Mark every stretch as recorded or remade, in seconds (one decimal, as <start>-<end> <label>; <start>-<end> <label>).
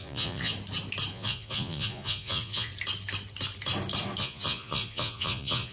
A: 0.0-0.5 remade; 0.5-1.1 recorded; 1.1-2.7 remade; 2.7-4.2 recorded; 4.2-5.7 remade